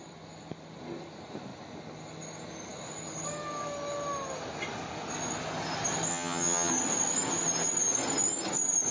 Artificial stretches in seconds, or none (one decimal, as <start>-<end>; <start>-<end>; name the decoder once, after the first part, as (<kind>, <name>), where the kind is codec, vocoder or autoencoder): 6.1-6.7 (vocoder, HiFi-GAN)